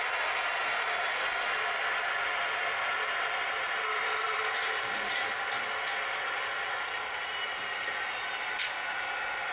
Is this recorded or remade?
recorded